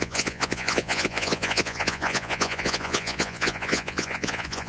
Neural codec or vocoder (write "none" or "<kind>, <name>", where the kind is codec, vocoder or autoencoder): vocoder, Vocos